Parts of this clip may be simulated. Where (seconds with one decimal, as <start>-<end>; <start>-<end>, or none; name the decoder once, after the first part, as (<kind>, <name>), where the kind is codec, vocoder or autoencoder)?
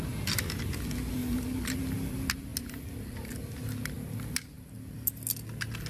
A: none